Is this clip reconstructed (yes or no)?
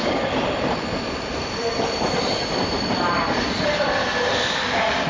no